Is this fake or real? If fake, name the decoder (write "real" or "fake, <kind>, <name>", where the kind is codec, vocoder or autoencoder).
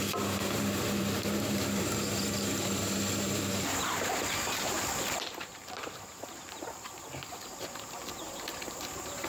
fake, vocoder, BigVGAN v2